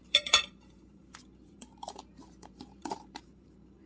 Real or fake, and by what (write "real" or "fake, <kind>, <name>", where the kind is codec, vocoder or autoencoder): fake, vocoder, BigVGAN v2